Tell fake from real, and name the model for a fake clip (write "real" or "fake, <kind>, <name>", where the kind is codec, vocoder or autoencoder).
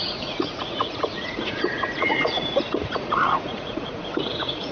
fake, vocoder, Vocos